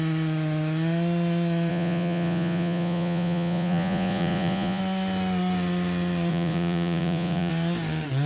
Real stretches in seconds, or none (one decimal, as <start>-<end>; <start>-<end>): 0.0-1.7; 4.8-6.3; 7.5-8.3